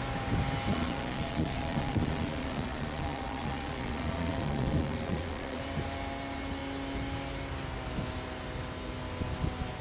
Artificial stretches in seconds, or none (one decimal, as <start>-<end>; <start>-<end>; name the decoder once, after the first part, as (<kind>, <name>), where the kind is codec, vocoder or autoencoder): 0.7-5.6 (vocoder, Vocos)